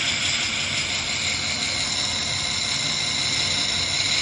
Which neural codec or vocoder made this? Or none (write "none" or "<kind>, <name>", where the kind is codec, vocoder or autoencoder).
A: none